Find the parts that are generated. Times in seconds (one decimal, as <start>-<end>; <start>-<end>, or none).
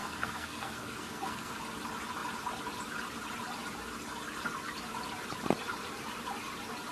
0.0-1.6